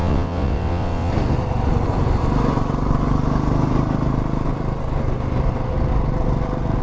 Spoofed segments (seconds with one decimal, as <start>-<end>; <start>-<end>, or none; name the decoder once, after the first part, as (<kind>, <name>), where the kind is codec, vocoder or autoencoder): 0.0-1.1 (vocoder, WaveNeXt)